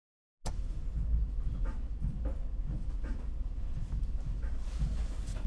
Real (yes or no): yes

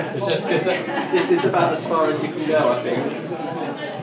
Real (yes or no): yes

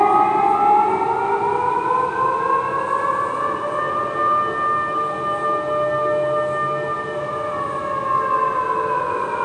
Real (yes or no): yes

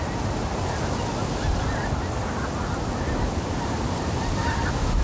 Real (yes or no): yes